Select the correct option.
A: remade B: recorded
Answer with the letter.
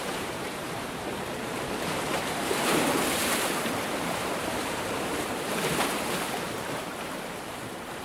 A